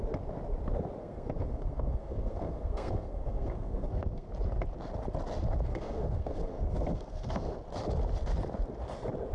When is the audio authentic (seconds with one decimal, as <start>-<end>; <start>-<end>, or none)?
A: 0.0-1.0; 4.3-5.7; 7.5-9.3